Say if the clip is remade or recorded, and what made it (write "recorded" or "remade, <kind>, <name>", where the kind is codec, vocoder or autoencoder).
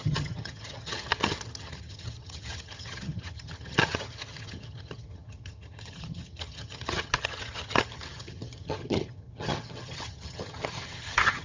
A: remade, vocoder, HiFi-GAN